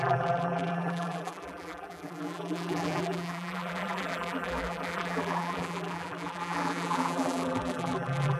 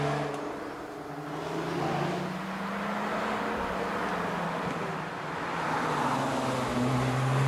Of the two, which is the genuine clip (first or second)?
second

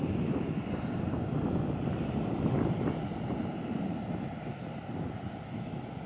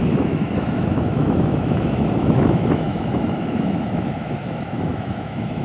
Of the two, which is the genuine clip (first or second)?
first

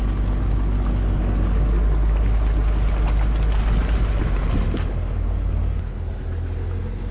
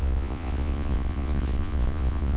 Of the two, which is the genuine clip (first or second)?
first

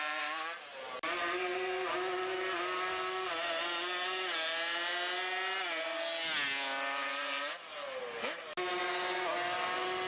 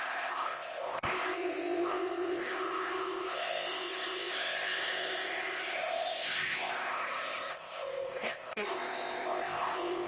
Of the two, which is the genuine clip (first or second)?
first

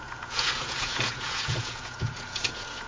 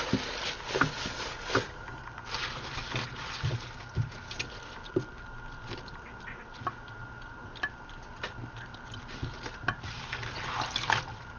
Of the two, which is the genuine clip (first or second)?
second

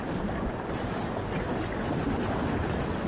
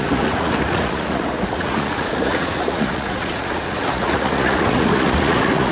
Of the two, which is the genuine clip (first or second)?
first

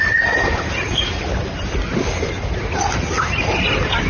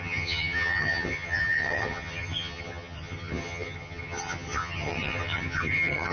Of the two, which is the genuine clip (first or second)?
first